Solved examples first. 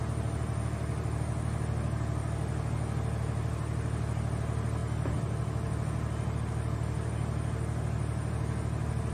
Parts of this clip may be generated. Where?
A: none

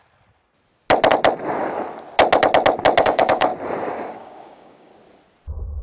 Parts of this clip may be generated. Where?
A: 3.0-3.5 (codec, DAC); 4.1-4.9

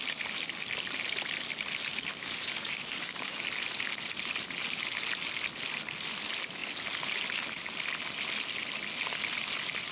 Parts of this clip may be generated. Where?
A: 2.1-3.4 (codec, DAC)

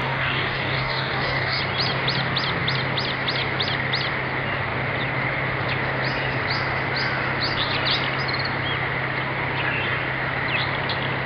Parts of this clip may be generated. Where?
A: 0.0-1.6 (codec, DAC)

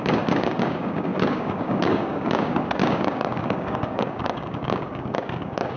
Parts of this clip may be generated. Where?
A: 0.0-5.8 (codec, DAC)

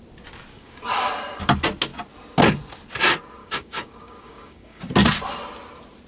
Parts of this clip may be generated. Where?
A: 0.5-1.1 (codec, DAC); 3.4-4.8